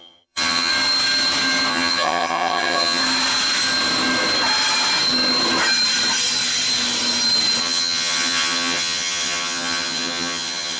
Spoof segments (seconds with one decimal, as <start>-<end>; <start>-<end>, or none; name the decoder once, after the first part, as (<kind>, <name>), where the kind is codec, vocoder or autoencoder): 0.0-0.7 (vocoder, HiFi-GAN); 1.7-3.0; 7.6-10.8